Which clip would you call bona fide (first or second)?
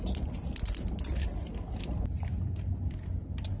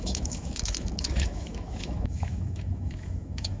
first